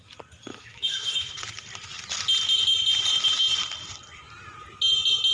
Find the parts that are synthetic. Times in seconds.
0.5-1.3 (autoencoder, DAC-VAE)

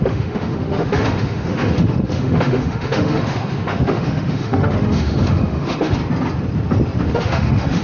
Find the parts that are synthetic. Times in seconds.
0.0-6.0 (autoencoder, DAC-VAE); 7.0-7.8

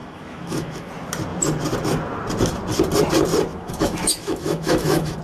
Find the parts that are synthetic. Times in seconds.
0.0-0.9 (autoencoder, DAC-VAE); 3.5-5.2

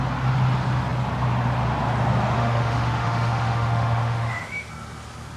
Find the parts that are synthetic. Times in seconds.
2.4-4.7 (autoencoder, DAC-VAE)

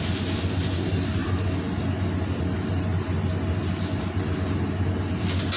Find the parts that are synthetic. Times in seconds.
none

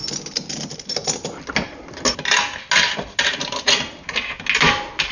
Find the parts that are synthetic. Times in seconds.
none

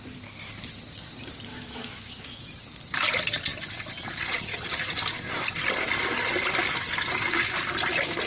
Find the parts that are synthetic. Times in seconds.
1.5-2.6 (autoencoder, DAC-VAE)